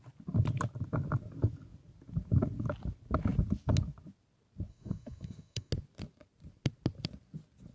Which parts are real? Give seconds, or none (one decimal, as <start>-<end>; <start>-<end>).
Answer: 0.0-4.7; 5.7-7.7